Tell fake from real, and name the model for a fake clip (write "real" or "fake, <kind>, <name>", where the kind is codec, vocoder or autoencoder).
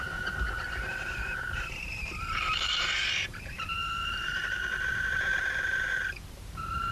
fake, vocoder, BigVGAN v2